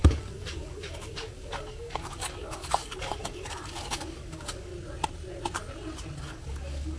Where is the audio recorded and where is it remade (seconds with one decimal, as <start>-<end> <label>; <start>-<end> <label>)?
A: 0.0-4.7 remade; 4.7-6.2 recorded; 6.2-7.0 remade